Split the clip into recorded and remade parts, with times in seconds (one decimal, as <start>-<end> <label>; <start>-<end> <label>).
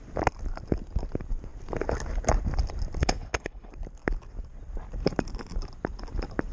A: 0.0-3.0 recorded; 3.0-3.7 remade; 3.7-6.5 recorded